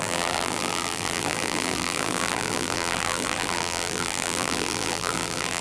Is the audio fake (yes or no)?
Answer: yes